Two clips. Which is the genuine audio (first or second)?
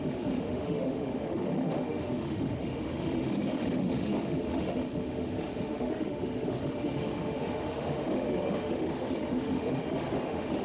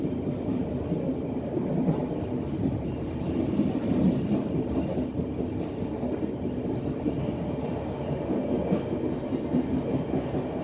second